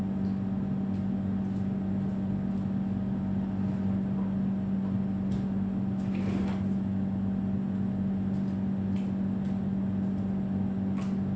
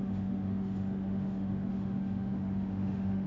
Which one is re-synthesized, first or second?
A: second